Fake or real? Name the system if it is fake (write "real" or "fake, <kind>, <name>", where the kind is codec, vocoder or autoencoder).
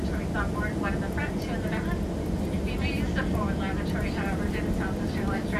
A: real